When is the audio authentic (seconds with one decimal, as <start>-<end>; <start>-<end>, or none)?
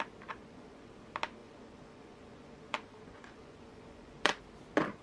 0.0-0.4; 0.9-1.4; 4.4-5.0